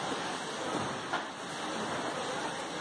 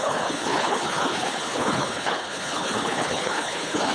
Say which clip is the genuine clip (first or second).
first